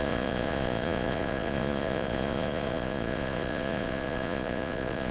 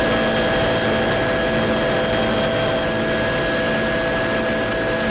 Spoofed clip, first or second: first